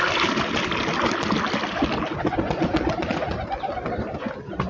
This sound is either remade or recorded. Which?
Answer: recorded